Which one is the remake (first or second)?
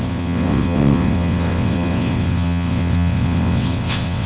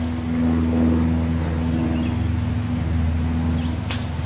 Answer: first